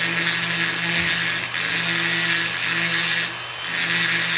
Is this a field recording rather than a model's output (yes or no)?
yes